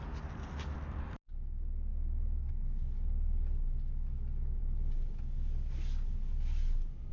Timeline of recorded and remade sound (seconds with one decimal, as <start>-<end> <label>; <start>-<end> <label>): 0.0-7.1 recorded